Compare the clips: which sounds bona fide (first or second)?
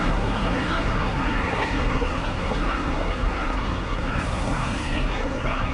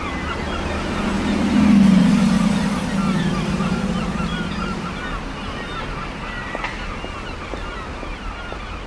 second